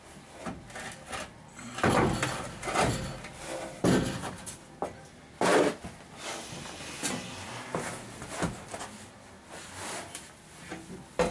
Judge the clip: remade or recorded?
recorded